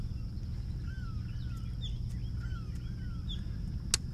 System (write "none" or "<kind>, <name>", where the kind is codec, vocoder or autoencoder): none